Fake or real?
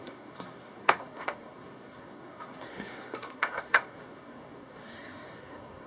fake